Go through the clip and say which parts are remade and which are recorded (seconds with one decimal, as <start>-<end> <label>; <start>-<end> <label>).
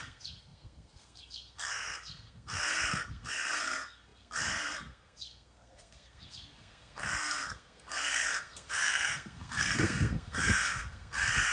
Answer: 0.0-11.5 remade